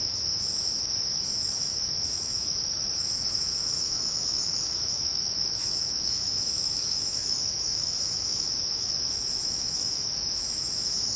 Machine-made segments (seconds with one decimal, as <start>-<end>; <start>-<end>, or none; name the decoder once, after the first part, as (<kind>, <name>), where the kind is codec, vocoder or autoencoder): 0.0-11.2 (autoencoder, DAC-VAE)